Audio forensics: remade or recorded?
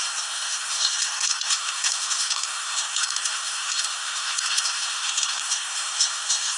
remade